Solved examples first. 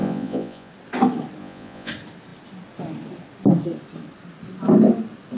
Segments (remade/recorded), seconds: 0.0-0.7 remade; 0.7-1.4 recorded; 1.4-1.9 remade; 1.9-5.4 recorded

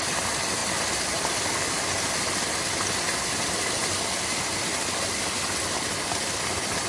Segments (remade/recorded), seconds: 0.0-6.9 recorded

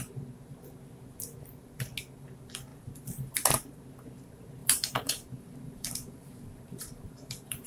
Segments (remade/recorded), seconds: 0.0-4.6 recorded; 4.6-7.7 remade